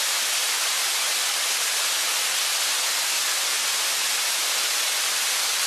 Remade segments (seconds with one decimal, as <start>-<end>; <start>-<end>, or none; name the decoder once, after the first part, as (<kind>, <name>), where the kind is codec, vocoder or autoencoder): none